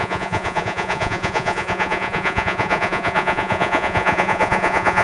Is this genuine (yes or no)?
no